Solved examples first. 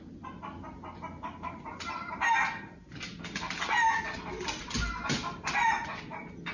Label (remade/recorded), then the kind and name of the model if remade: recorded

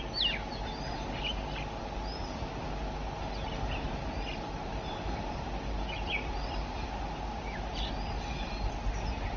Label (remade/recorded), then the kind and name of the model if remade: recorded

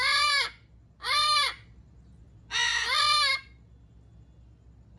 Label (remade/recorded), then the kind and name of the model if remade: recorded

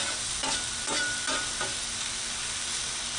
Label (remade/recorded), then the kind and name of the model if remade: recorded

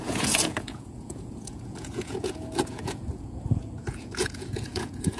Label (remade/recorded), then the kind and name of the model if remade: remade, vocoder, Vocos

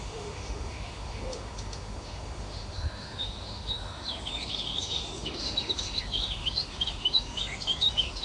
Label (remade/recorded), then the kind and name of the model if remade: remade, autoencoder, DAC-VAE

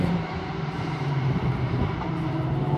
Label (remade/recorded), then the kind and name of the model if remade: remade, vocoder, BigVGAN v2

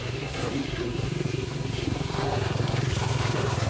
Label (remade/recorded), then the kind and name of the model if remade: remade, codec, SNAC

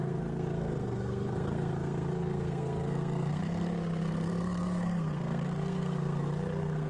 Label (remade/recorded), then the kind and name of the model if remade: remade, codec, SNAC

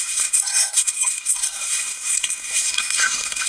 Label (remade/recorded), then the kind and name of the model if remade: remade, codec, SNAC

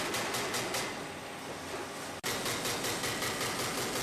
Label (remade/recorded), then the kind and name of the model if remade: recorded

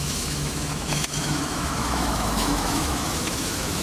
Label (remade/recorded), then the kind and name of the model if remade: remade, autoencoder, DAC-VAE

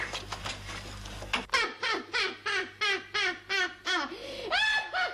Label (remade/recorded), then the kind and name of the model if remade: recorded